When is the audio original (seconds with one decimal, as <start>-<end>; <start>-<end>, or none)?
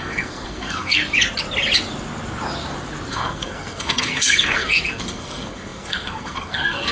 1.0-3.1